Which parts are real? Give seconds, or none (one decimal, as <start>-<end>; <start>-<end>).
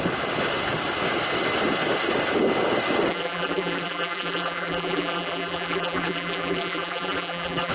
0.0-3.1